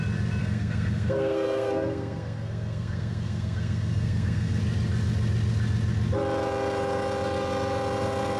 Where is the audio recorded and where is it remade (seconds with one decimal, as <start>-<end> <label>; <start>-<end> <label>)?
0.0-0.4 recorded; 0.4-4.6 remade; 4.6-8.4 recorded